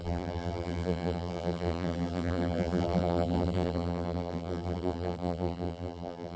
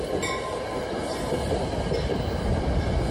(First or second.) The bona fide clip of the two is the second